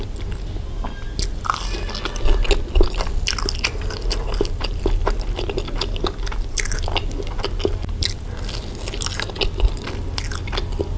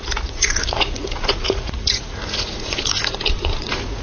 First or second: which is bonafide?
first